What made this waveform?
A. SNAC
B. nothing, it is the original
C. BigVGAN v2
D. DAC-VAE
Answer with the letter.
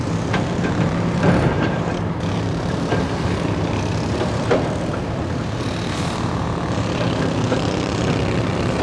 C